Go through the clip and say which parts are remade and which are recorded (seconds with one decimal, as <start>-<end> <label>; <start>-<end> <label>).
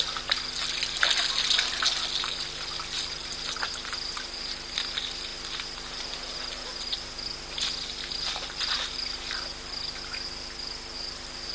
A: 0.0-11.5 recorded